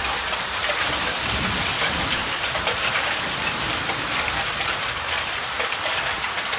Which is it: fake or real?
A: fake